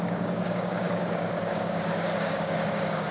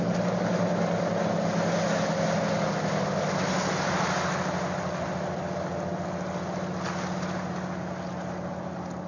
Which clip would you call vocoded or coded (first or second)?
first